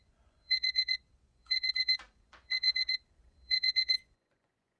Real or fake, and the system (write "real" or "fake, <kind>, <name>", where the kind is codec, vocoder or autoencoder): fake, vocoder, Vocos